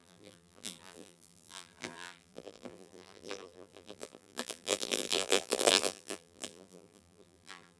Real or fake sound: fake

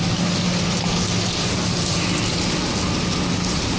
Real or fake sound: real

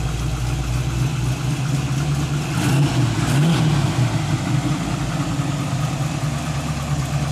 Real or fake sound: real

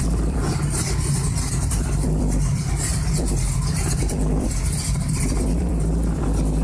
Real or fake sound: fake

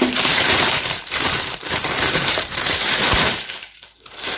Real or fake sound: fake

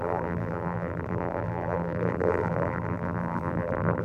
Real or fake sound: fake